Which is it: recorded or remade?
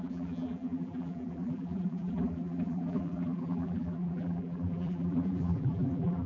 remade